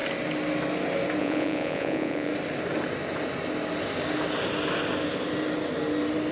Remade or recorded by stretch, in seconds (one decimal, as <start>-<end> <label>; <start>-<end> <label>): 0.0-1.2 recorded; 1.2-2.3 remade; 2.3-6.3 recorded